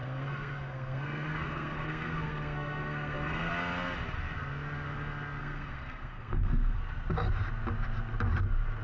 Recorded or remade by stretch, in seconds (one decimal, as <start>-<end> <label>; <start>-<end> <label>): 0.0-3.5 remade; 3.5-5.4 recorded; 5.4-6.8 remade; 6.8-8.8 recorded